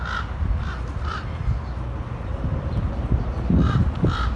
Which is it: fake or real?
real